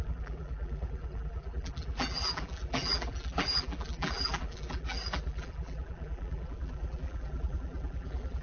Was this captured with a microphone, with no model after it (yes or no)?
no